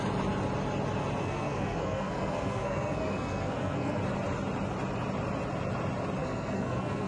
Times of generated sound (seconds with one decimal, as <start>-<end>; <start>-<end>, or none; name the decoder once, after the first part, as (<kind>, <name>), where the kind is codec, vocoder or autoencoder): 1.2-4.0 (codec, SNAC); 6.2-7.1